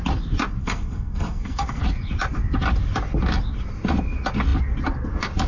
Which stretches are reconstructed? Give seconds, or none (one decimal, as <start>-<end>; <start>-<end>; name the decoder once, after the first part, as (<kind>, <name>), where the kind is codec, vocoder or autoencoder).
0.6-1.8 (codec, SNAC)